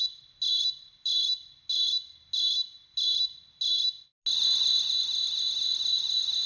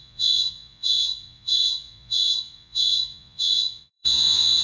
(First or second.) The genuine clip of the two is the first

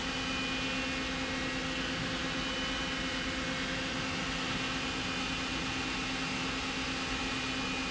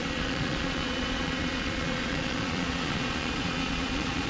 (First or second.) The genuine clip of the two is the first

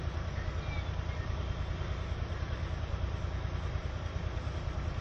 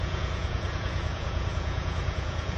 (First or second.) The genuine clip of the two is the first